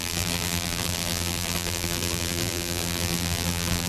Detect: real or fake fake